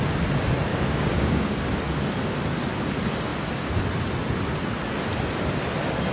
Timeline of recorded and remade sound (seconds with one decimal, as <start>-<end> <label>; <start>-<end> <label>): 0.0-0.7 recorded; 0.7-1.6 remade; 1.6-6.1 recorded